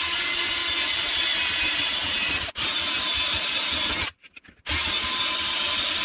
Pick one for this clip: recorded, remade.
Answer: recorded